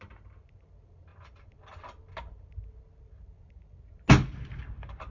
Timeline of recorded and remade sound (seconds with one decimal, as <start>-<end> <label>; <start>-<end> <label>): 0.0-5.1 recorded